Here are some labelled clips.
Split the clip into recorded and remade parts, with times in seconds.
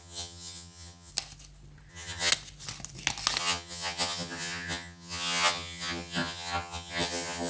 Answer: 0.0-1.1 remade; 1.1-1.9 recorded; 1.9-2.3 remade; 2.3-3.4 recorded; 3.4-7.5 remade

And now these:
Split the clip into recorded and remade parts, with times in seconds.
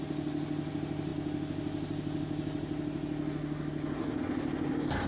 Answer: 0.0-5.1 recorded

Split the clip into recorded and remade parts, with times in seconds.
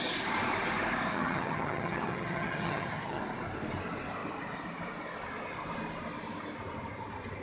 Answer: 0.0-1.1 recorded; 1.1-3.2 remade; 3.2-7.4 recorded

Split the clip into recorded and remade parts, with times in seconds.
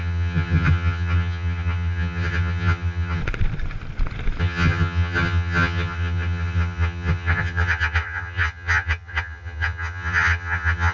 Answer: 0.0-3.2 remade; 3.2-4.4 recorded; 4.4-10.9 remade